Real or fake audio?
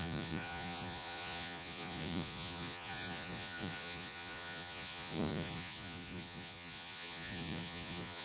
fake